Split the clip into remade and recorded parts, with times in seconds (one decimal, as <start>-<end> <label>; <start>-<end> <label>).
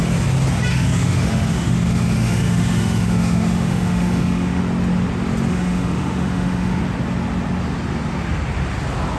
0.0-0.7 recorded; 0.7-4.6 remade; 4.6-5.5 recorded; 5.5-6.8 remade; 6.8-9.2 recorded